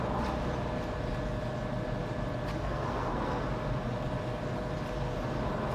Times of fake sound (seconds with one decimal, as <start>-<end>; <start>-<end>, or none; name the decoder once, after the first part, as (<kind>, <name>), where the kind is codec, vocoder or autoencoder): 2.5-3.4 (codec, SNAC)